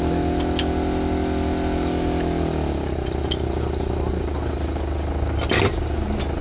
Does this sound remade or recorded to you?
recorded